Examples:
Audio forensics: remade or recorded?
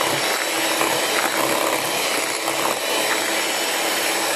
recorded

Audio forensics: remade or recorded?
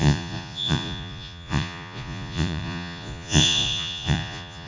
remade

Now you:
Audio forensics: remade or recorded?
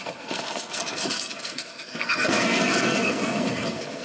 remade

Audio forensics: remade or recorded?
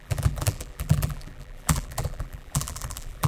remade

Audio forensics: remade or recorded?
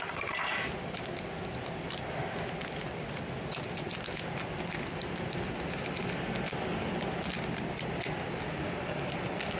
recorded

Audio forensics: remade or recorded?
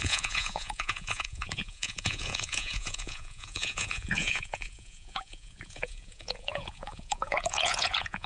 remade